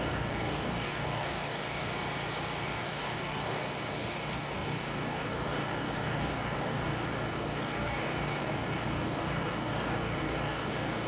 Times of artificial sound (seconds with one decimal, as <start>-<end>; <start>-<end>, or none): 0.0-1.9; 2.6-11.1